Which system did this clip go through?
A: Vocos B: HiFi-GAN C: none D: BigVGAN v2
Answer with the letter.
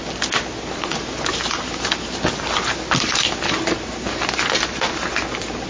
C